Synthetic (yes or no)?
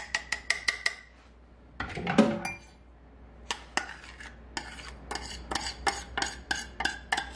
no